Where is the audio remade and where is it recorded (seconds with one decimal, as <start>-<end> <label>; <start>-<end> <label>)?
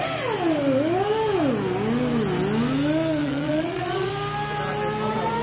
0.0-3.2 recorded; 3.2-4.1 remade; 4.1-5.4 recorded